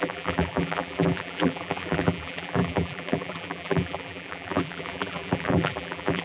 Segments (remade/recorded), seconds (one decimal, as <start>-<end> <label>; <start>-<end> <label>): 0.0-6.2 remade